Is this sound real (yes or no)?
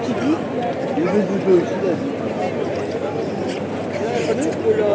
yes